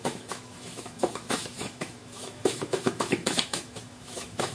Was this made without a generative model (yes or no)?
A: no